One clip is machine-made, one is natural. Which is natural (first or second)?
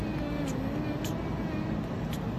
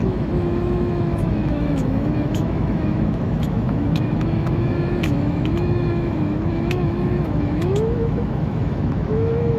first